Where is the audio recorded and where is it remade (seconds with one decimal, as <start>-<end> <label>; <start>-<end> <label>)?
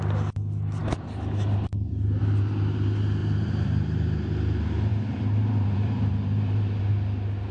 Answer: 0.0-3.2 recorded; 3.2-4.1 remade; 4.1-4.9 recorded; 4.9-6.8 remade; 6.8-7.5 recorded